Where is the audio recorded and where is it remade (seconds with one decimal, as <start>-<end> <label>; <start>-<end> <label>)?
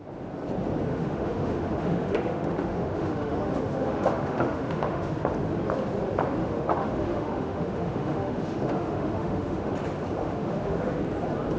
0.0-0.9 recorded; 0.9-5.1 remade; 5.1-6.4 recorded; 6.4-9.7 remade; 9.7-10.2 recorded; 10.2-11.0 remade; 11.0-11.6 recorded